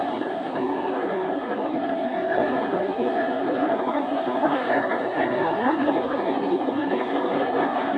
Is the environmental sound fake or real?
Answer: fake